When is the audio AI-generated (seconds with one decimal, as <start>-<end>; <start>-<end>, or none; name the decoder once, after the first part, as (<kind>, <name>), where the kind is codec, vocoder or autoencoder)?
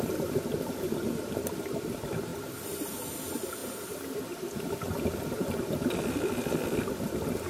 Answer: 0.0-7.5 (vocoder, BigVGAN v2)